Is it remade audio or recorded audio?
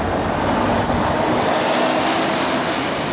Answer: recorded